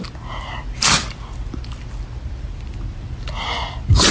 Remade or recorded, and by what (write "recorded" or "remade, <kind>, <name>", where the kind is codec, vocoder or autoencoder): remade, vocoder, BigVGAN v2